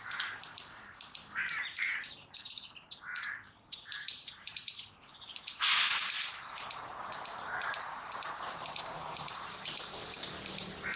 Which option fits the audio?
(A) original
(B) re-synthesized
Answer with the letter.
B